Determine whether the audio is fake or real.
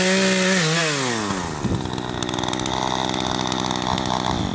real